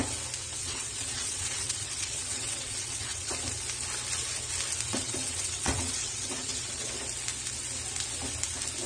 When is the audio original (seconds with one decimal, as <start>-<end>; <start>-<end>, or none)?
0.0-0.6; 3.3-4.9; 7.0-8.9